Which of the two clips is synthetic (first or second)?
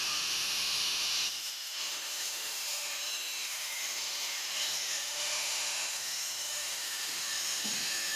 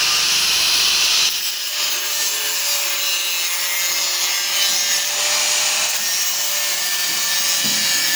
first